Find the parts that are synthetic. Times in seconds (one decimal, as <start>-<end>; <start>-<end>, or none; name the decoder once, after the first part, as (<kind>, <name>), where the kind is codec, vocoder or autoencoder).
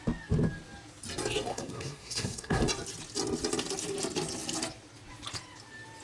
1.5-2.6 (codec, SNAC)